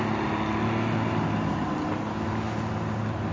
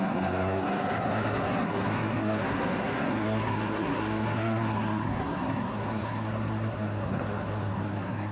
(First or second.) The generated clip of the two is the second